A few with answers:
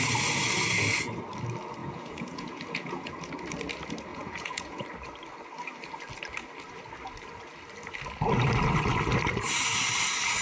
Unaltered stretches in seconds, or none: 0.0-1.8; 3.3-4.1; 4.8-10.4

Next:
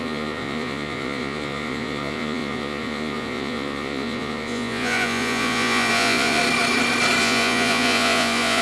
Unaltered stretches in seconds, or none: 6.4-7.2